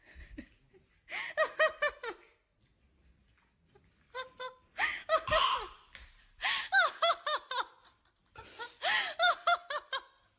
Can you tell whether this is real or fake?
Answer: real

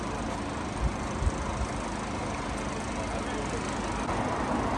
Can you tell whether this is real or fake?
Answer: real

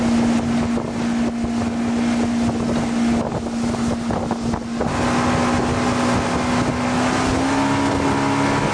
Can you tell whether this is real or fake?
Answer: real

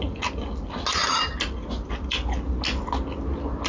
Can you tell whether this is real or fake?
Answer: real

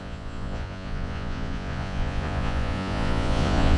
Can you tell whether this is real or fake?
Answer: fake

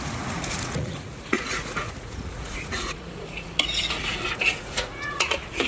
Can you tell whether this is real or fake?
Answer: fake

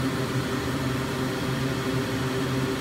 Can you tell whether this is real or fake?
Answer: real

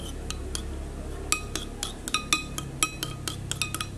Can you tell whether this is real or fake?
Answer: real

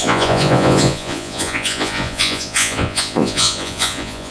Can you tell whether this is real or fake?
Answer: fake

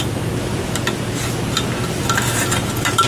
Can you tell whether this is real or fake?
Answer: real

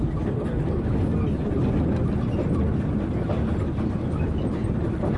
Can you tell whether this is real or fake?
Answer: real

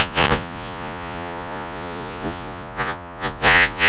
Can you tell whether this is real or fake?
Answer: fake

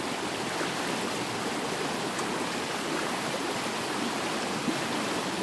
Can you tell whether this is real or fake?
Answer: real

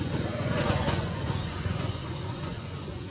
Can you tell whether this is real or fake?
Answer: fake